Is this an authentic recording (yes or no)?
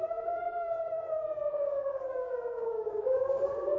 no